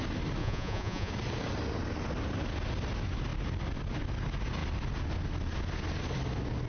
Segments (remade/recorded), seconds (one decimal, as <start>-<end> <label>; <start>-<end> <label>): 0.0-0.4 recorded; 0.4-1.1 remade; 1.1-6.7 recorded